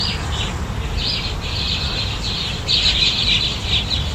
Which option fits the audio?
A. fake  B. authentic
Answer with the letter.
B